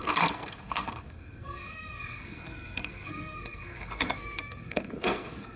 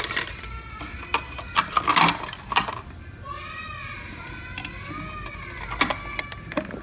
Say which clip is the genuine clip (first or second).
second